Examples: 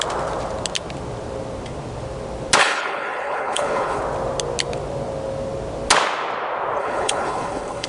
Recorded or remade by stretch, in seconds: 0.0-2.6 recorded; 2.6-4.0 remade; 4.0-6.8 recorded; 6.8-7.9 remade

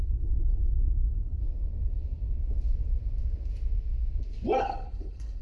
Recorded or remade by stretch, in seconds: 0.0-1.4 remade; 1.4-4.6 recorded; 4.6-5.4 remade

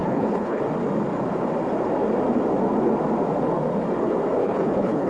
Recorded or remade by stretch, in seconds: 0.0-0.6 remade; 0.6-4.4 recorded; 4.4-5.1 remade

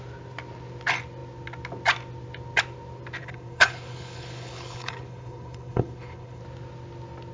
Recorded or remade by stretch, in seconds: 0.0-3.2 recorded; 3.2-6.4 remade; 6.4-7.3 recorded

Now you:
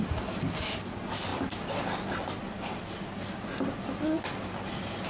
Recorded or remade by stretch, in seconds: 0.0-5.1 recorded

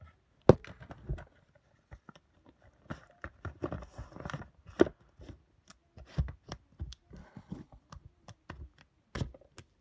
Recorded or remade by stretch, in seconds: 0.0-7.2 recorded; 7.2-7.8 remade; 7.8-9.8 recorded

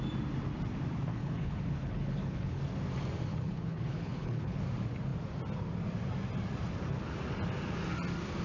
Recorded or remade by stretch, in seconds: 0.0-1.1 recorded; 1.1-2.6 remade; 2.6-3.3 recorded; 3.3-4.6 remade; 4.6-8.4 recorded

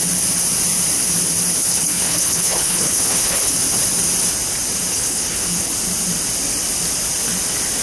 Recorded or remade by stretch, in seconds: 0.0-1.6 recorded; 1.6-3.5 remade; 3.5-4.9 recorded; 4.9-5.7 remade; 5.7-7.8 recorded